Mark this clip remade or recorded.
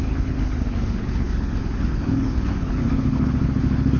remade